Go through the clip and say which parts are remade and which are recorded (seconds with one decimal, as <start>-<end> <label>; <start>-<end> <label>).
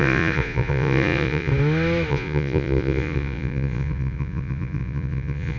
0.0-1.5 remade; 1.5-2.1 recorded; 2.1-5.6 remade